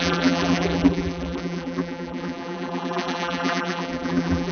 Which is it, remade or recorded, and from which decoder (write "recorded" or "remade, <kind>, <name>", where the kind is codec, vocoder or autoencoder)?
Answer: remade, vocoder, BigVGAN v2